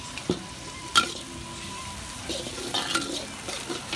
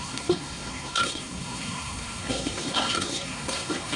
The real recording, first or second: first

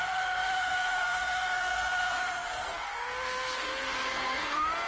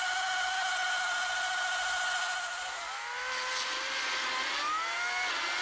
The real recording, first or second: second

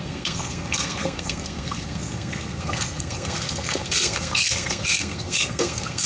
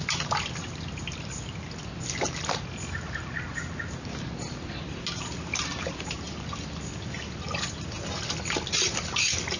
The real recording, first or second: second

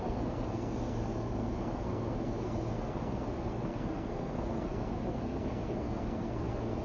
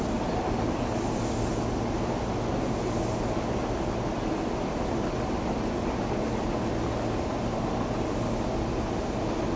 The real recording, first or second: second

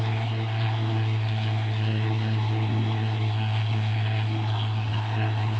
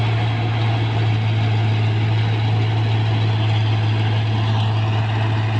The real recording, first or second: second